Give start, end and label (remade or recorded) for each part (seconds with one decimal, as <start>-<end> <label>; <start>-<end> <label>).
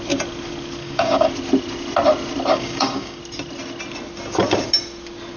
0.0-0.8 recorded; 0.8-1.3 remade; 1.3-2.5 recorded; 2.5-3.2 remade; 3.2-5.4 recorded